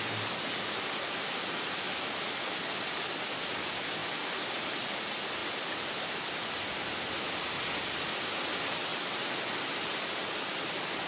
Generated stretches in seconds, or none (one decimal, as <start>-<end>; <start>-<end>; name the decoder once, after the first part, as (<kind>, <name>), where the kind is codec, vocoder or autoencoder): none